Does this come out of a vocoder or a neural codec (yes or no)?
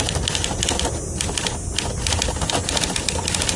no